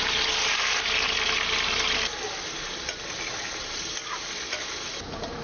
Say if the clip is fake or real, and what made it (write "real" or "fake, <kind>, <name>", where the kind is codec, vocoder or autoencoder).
real